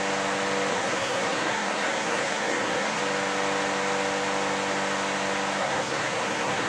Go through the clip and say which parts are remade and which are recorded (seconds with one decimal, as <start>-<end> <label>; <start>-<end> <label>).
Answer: 0.0-0.7 recorded; 0.7-3.0 remade; 3.0-5.6 recorded; 5.6-6.7 remade